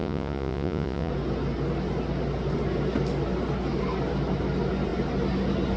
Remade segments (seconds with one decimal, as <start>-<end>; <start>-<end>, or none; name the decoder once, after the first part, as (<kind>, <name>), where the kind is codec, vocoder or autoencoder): 0.0-1.1 (vocoder, Vocos)